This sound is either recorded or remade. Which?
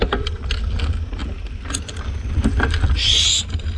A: recorded